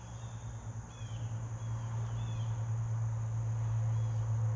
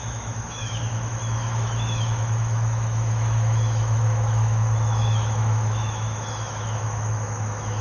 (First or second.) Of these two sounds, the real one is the first